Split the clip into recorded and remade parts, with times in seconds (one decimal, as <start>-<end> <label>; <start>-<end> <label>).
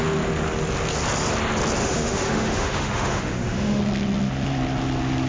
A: 0.0-1.8 recorded; 1.8-3.8 remade; 3.8-5.3 recorded